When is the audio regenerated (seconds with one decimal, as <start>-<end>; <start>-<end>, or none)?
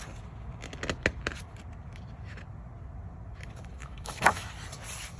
3.8-4.5